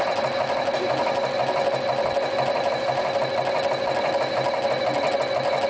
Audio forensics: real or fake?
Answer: real